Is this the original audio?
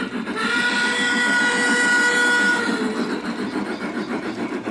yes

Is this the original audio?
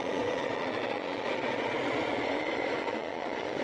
no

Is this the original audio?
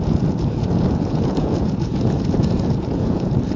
no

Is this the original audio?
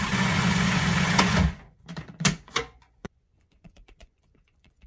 no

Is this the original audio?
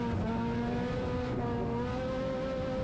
yes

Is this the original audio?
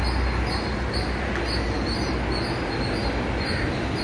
yes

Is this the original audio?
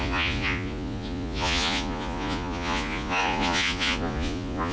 no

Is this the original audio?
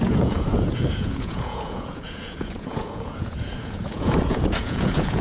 no